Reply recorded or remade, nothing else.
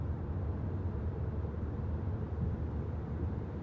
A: recorded